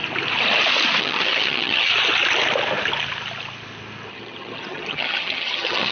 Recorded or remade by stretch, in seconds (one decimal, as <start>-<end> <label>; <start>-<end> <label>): 0.0-1.0 recorded; 1.0-1.9 remade; 1.9-4.1 recorded; 4.1-5.9 remade